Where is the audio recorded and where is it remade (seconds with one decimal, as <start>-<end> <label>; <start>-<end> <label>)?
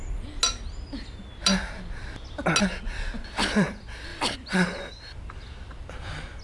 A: 0.0-4.1 recorded; 4.1-4.9 remade; 4.9-6.4 recorded